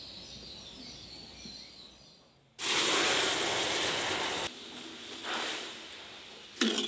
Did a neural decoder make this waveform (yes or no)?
no